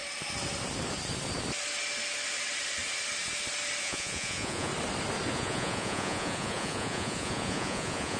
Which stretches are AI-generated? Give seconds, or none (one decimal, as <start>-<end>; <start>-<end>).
3.8-4.7; 5.3-8.2